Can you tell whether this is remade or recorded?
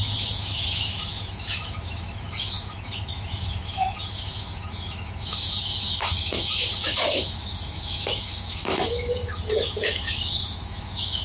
remade